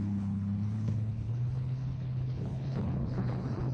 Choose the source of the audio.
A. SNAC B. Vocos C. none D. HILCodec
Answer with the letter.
D